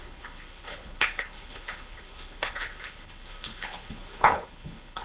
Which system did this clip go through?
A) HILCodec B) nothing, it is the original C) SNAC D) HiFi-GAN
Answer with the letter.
A